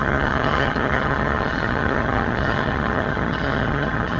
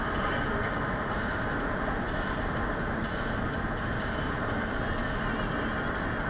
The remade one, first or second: first